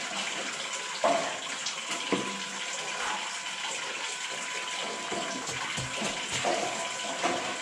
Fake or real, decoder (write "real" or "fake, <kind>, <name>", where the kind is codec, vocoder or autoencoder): real